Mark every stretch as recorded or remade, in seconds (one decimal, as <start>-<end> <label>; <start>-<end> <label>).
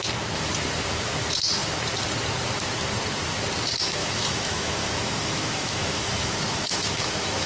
0.0-4.0 recorded; 4.0-7.5 remade